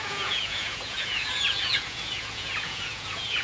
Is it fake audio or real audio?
fake